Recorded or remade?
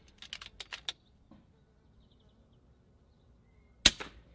recorded